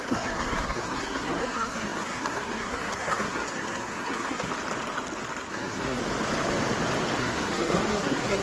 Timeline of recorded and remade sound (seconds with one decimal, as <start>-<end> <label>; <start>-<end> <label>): 0.0-4.5 remade; 4.5-5.5 recorded; 5.5-6.0 remade; 6.0-7.2 recorded; 7.2-8.4 remade